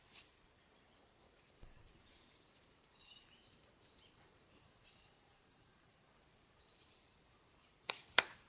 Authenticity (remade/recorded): remade